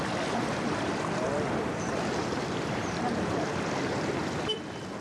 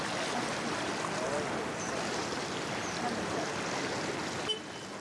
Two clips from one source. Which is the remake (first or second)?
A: first